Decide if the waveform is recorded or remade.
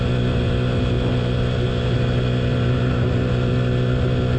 recorded